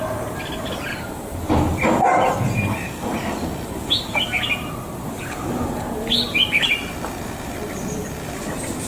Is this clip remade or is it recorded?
recorded